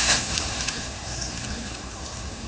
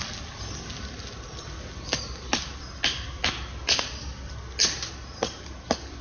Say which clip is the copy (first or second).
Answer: first